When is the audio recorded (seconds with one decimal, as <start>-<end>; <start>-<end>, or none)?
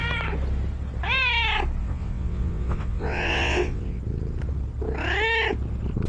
0.0-1.8; 4.0-6.1